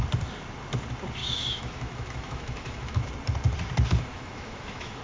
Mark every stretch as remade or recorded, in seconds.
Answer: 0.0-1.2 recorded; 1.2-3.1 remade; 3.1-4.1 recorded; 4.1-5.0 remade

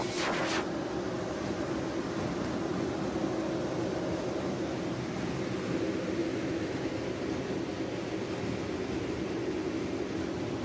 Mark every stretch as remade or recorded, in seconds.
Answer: 0.0-6.2 recorded; 6.2-6.9 remade; 6.9-10.6 recorded

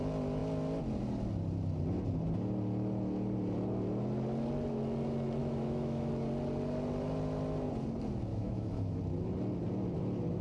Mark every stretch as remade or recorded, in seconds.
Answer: 0.0-5.4 recorded; 5.4-6.1 remade; 6.1-8.3 recorded; 8.3-9.0 remade; 9.0-10.4 recorded